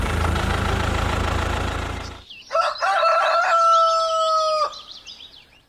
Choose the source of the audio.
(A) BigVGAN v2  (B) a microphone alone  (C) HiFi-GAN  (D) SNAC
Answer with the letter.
B